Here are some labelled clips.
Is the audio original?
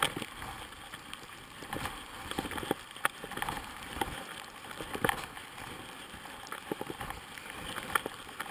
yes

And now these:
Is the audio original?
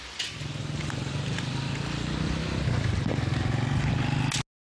yes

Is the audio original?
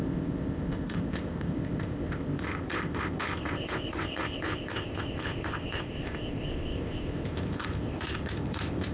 no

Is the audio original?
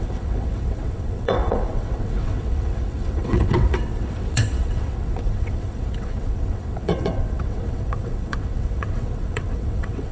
no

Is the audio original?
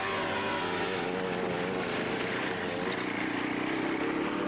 yes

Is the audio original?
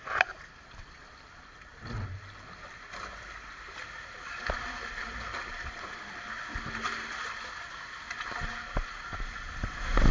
yes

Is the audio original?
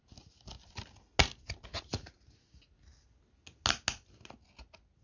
yes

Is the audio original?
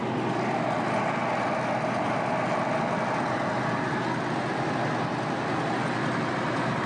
yes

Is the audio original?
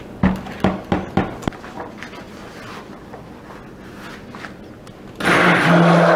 yes